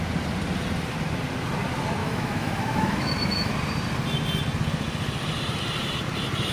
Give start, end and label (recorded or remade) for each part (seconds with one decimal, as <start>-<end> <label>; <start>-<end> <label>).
0.0-2.0 recorded; 2.0-3.5 remade; 3.5-6.5 recorded

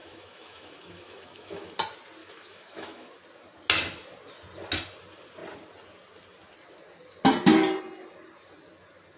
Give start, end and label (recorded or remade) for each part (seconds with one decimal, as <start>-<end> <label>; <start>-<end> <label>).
0.0-1.7 remade; 1.7-2.2 recorded; 2.2-3.1 remade; 3.1-9.2 recorded